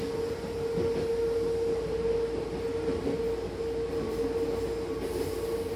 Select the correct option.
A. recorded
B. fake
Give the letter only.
A